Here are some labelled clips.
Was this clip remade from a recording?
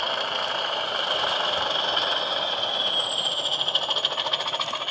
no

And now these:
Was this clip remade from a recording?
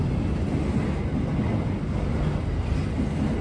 no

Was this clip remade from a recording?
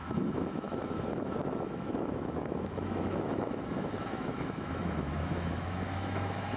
yes